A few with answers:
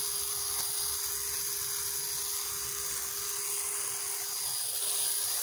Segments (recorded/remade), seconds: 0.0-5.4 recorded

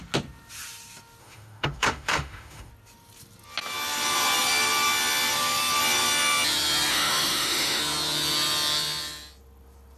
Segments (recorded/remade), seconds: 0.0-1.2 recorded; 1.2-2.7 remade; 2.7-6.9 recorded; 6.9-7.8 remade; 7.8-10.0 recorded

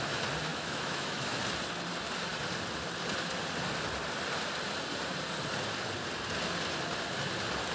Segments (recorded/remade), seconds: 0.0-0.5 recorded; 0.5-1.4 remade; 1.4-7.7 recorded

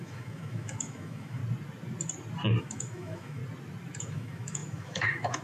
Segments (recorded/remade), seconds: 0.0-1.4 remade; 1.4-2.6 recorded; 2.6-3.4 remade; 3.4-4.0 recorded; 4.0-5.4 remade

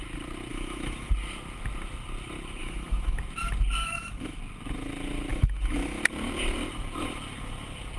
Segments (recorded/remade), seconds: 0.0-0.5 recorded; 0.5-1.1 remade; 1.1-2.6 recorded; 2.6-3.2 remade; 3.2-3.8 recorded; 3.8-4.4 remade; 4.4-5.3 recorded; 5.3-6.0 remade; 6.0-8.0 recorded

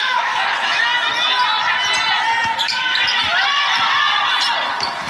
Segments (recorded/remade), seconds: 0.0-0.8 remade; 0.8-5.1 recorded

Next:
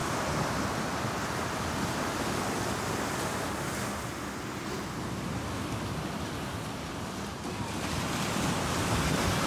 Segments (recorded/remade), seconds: 0.0-9.5 recorded